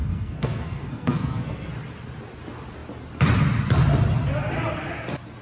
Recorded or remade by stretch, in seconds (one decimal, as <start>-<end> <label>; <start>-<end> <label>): 0.0-1.7 remade; 1.7-5.4 recorded